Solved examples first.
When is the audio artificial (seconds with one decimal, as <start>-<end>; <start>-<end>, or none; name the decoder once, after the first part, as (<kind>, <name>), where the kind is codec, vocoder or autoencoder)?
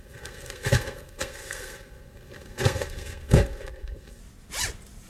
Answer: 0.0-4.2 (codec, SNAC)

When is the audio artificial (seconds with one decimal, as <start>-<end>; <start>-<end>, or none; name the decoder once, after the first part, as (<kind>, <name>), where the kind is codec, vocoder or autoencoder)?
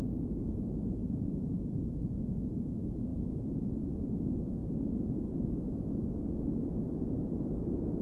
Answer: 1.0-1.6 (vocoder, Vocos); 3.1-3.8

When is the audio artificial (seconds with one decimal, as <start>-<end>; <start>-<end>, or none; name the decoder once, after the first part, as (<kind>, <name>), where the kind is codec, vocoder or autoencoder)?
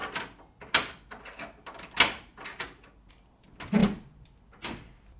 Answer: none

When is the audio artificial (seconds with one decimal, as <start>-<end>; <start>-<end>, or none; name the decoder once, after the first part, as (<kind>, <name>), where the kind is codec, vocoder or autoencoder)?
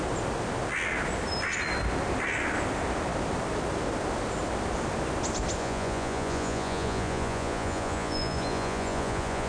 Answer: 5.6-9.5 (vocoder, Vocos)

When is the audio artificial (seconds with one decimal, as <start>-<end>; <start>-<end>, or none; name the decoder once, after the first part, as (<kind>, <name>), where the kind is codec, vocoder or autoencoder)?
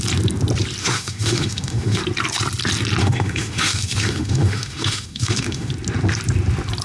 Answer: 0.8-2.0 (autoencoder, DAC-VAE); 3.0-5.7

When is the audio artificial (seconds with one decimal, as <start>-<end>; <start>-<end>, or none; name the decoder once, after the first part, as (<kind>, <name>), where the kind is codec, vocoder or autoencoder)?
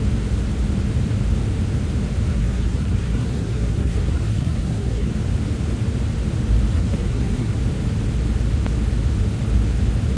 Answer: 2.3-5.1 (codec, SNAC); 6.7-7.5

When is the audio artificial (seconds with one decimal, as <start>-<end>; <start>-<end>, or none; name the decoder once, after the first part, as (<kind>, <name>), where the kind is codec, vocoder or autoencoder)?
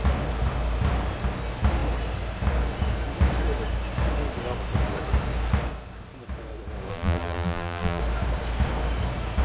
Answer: 6.9-8.0 (vocoder, BigVGAN v2)